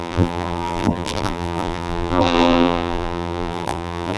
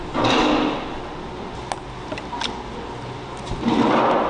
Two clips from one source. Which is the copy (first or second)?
first